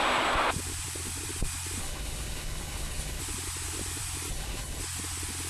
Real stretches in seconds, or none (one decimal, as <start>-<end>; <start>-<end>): 0.0-1.8; 3.2-4.3; 4.8-5.5